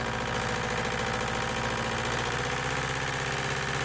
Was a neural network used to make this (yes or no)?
no